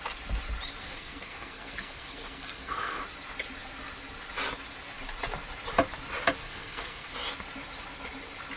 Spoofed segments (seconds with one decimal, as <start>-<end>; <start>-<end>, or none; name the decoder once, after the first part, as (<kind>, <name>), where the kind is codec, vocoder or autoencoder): 0.8-3.0 (codec, SNAC); 6.4-7.1